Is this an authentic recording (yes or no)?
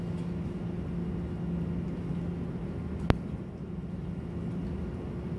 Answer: yes